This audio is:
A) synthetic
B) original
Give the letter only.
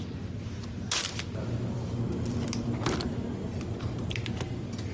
B